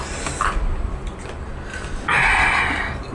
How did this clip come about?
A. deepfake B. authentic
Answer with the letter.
B